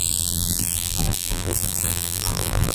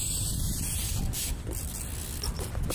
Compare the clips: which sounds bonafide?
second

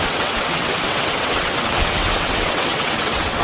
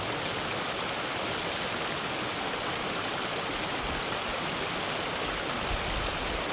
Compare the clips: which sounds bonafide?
second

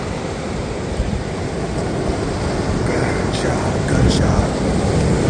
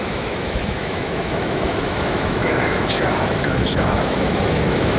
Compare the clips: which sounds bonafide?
first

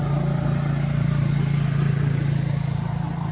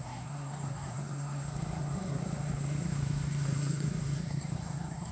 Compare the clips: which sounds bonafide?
first